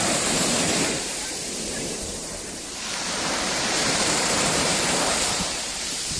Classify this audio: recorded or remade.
remade